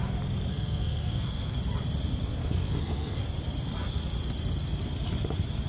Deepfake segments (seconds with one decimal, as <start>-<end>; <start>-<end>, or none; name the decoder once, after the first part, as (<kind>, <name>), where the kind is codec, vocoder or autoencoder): 0.5-1.6 (codec, SNAC); 2.4-3.2